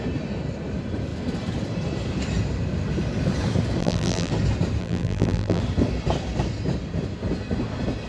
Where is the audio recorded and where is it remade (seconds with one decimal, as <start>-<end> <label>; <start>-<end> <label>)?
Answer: 0.0-3.8 recorded; 3.8-4.3 remade; 4.3-4.8 recorded; 4.8-5.6 remade; 5.6-8.1 recorded